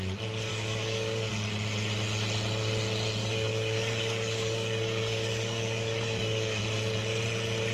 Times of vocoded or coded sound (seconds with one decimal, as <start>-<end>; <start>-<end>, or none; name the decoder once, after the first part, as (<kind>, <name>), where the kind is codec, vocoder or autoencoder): 0.5-1.3 (codec, DAC); 3.2-6.6